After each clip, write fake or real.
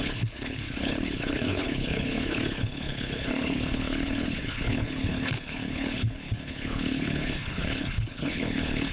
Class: fake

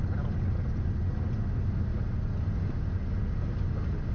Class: real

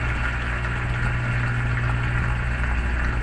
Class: real